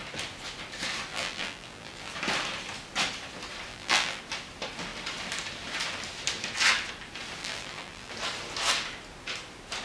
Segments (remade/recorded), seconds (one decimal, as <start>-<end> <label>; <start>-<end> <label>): 0.0-1.1 recorded; 1.1-2.1 remade; 2.1-3.7 recorded; 3.7-4.2 remade; 4.2-7.4 recorded; 7.4-8.1 remade; 8.1-9.8 recorded